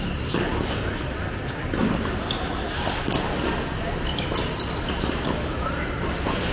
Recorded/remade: recorded